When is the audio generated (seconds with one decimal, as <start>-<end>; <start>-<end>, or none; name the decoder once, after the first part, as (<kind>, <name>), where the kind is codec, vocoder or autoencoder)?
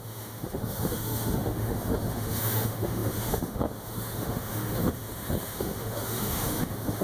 0.0-7.0 (autoencoder, DAC-VAE)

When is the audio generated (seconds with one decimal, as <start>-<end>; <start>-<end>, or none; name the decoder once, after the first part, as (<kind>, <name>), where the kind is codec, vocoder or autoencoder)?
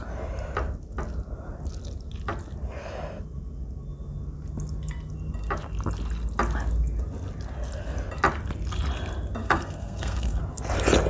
9.4-10.4 (codec, SNAC)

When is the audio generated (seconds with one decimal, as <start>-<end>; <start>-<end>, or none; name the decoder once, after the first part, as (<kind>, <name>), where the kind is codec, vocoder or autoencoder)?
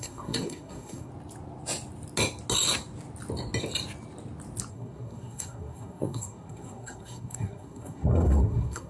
0.0-1.1 (codec, SNAC); 4.7-8.9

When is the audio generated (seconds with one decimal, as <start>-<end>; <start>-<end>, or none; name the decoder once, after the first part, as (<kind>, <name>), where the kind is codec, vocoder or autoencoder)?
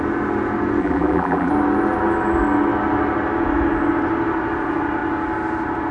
0.8-1.5 (vocoder, BigVGAN v2)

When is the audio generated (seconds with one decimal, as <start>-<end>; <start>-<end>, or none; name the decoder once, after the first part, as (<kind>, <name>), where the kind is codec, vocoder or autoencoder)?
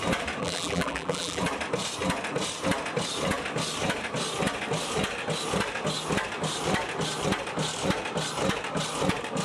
0.4-1.4 (vocoder, BigVGAN v2)